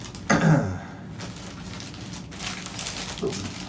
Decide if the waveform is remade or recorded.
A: recorded